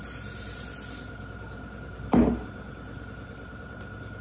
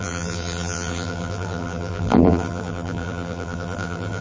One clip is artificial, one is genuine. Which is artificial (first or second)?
second